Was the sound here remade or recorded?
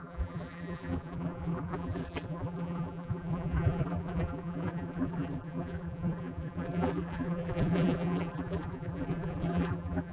remade